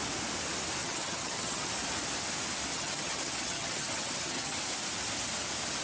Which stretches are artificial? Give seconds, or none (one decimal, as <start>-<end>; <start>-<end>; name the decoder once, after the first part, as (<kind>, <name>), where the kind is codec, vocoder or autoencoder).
0.8-1.7 (vocoder, HiFi-GAN); 2.7-4.6